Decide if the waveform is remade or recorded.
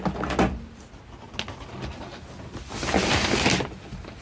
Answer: recorded